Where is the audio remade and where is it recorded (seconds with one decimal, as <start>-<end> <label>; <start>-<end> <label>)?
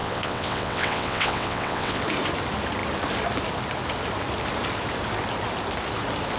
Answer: 0.0-2.0 remade; 2.0-6.4 recorded